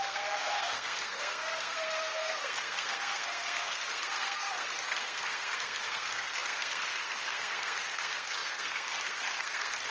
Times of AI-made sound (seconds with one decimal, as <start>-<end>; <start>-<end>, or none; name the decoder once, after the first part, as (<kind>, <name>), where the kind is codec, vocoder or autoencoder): 0.0-9.9 (codec, SNAC)